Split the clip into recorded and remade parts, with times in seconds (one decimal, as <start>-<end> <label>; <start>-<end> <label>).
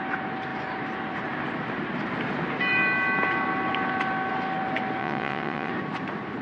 0.0-5.0 recorded; 5.0-5.7 remade; 5.7-6.4 recorded